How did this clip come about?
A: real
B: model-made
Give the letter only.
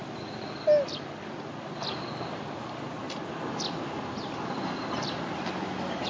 A